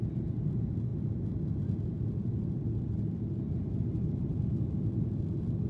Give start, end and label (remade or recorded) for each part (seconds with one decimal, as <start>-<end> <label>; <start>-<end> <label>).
0.0-5.7 recorded